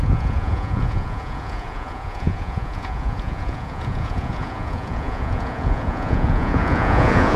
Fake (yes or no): yes